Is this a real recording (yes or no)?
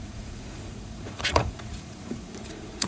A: no